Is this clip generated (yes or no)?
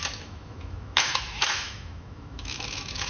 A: yes